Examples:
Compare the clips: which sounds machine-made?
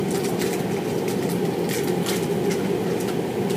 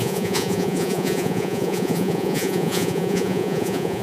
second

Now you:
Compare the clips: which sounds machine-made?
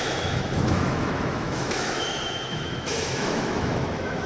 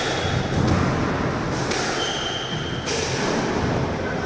first